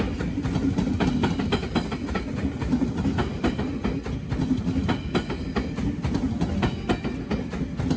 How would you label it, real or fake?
real